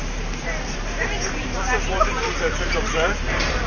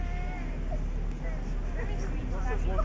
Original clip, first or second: second